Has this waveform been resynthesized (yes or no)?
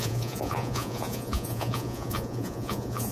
yes